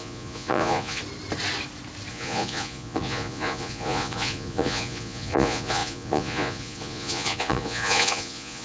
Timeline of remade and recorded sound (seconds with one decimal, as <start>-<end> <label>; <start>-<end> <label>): 0.0-1.0 remade; 1.0-2.1 recorded; 2.1-8.6 remade